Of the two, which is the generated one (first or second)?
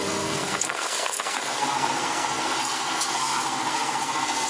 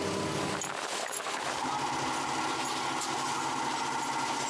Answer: first